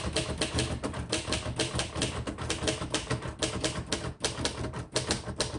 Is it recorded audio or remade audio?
recorded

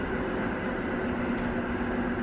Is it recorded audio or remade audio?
recorded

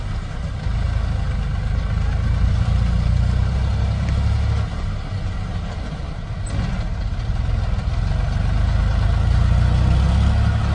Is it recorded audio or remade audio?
recorded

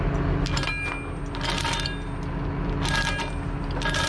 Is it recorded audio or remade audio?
recorded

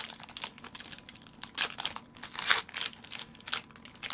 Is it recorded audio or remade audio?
recorded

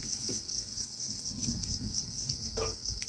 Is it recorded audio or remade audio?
remade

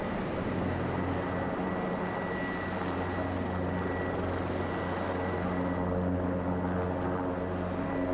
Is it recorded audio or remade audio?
recorded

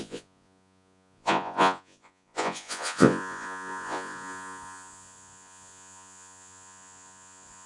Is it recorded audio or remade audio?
remade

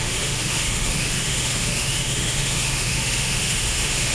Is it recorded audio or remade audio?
remade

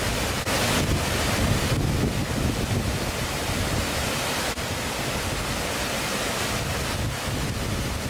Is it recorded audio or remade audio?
recorded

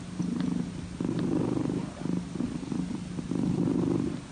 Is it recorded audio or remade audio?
recorded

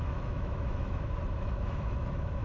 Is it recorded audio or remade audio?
remade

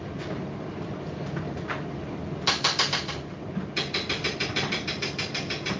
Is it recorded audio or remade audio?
recorded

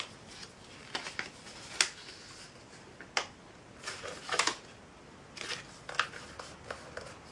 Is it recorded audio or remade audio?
recorded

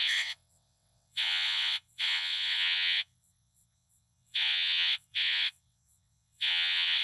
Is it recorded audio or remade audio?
remade